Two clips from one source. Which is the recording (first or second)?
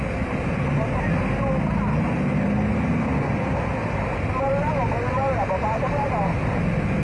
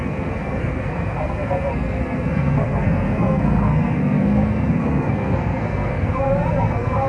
first